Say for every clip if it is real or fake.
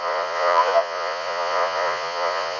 fake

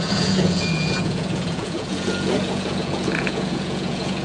fake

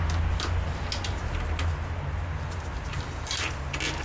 real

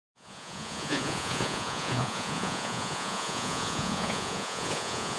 fake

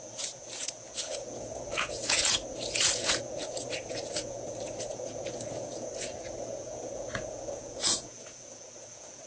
fake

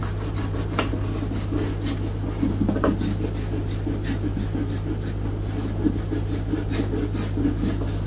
real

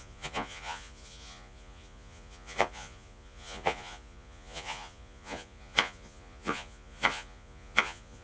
fake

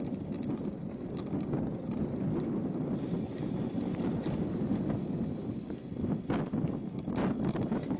real